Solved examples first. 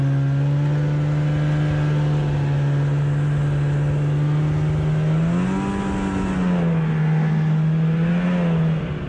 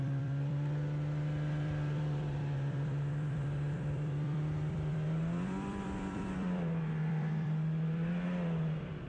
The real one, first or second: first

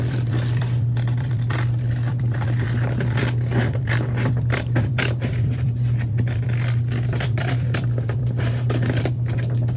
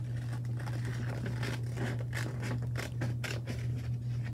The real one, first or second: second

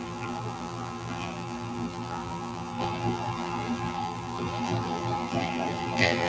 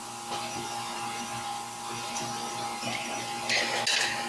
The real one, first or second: second